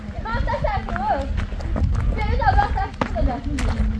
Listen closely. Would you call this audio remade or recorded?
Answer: recorded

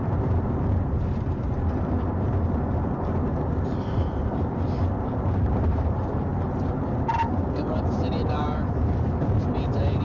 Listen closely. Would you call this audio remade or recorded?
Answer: remade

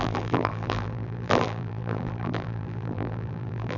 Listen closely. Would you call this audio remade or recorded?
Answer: remade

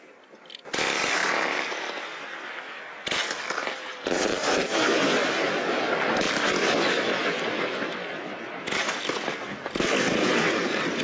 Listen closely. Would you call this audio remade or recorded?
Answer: remade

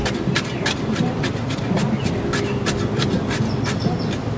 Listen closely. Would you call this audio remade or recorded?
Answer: recorded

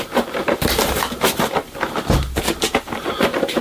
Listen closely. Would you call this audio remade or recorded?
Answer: recorded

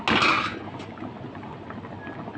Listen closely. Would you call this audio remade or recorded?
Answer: recorded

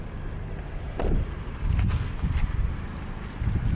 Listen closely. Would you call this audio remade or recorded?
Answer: remade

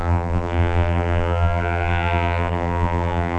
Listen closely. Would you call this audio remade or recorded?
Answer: remade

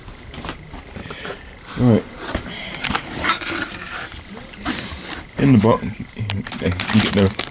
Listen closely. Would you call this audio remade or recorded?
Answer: remade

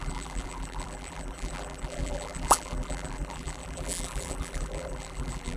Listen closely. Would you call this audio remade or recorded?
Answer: remade